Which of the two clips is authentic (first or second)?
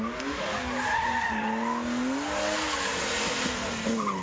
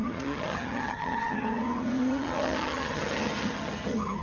first